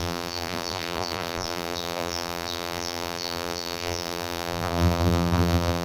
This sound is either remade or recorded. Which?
remade